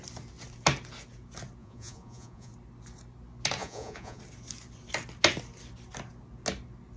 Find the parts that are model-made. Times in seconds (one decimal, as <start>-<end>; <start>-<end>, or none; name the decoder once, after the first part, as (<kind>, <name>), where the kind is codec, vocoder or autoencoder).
1.6-2.5 (vocoder, Vocos); 3.6-4.2